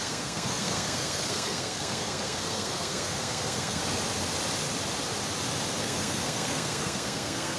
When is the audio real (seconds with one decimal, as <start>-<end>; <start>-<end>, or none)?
3.8-5.8